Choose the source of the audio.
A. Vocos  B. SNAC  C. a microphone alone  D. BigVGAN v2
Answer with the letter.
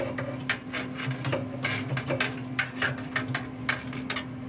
C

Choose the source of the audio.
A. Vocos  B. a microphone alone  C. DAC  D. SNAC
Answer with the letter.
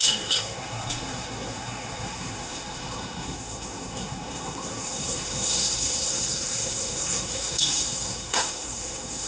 D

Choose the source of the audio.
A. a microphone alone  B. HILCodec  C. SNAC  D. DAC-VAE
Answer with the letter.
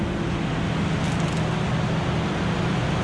A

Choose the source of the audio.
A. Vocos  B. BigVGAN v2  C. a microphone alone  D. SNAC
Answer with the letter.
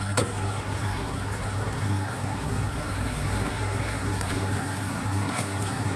D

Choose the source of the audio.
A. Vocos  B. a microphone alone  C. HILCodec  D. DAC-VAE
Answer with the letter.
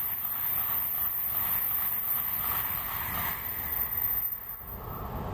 B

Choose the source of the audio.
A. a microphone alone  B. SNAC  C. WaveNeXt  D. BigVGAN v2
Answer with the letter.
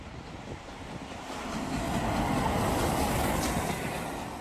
A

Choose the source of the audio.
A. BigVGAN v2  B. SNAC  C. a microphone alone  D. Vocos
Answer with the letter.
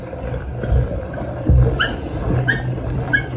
A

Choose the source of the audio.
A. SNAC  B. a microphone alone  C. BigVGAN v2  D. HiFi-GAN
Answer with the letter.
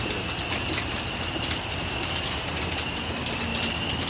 B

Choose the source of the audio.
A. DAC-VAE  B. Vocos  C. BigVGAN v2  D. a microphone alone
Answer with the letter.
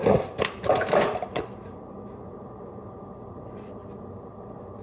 C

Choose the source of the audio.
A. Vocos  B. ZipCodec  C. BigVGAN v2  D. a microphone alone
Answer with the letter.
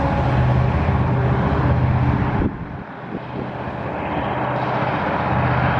D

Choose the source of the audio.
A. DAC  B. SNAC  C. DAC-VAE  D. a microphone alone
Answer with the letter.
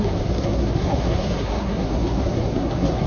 B